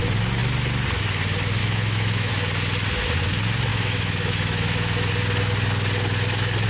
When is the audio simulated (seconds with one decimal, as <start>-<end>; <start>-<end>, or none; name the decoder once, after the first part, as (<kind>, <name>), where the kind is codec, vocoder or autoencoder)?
1.6-2.3 (autoencoder, DAC-VAE); 3.7-5.1